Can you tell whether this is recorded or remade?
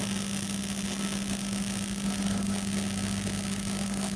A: recorded